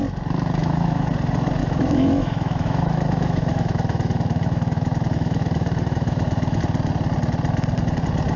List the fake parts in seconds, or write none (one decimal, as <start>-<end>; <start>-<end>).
0.6-1.1; 1.6-6.6